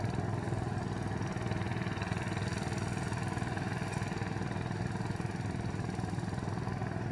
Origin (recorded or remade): recorded